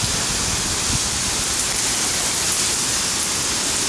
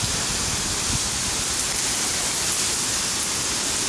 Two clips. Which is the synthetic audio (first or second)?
second